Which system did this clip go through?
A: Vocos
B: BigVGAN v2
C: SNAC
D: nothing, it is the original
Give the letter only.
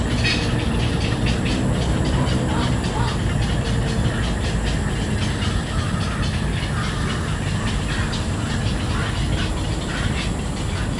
D